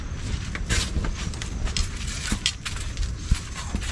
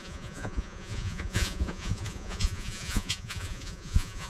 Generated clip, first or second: second